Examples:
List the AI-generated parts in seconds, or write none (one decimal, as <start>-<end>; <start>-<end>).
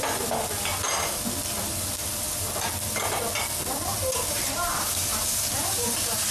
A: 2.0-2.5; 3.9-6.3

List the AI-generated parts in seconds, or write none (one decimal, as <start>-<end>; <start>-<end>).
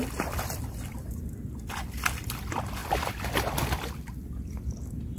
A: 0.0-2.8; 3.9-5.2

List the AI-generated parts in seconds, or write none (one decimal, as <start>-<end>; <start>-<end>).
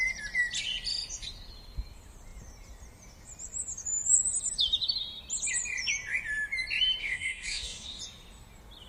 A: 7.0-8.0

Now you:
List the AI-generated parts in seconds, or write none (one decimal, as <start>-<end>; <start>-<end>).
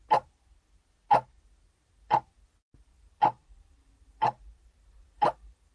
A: 2.9-5.7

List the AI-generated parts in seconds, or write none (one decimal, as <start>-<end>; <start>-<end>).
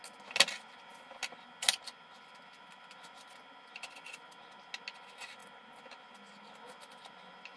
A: none